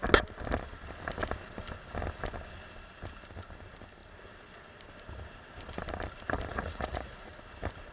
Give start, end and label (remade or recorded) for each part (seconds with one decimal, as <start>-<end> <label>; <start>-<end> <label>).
0.0-6.5 recorded; 6.5-7.3 remade; 7.3-7.9 recorded